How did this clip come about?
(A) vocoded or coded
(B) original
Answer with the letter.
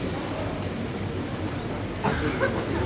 B